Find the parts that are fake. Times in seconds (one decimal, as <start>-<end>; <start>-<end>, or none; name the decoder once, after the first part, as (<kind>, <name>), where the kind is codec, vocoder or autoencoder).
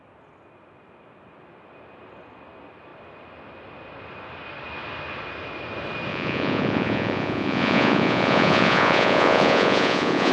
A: 6.1-10.3 (vocoder, Vocos)